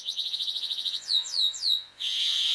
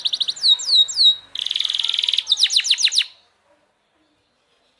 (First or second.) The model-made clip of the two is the first